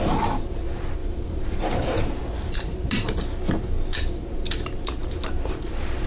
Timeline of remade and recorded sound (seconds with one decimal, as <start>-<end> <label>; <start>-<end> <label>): 0.0-1.0 recorded; 1.0-1.6 remade; 1.6-6.1 recorded